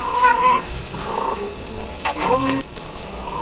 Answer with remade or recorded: remade